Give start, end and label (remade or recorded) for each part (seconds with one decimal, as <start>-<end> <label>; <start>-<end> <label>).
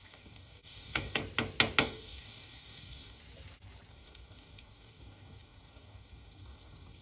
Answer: 0.0-1.2 remade; 1.2-1.8 recorded; 1.8-3.2 remade; 3.2-3.9 recorded; 3.9-7.0 remade